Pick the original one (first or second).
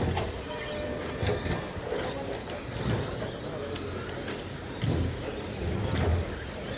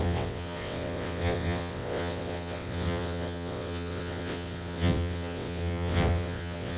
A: first